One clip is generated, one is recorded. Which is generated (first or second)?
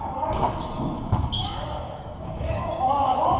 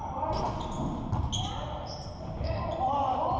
first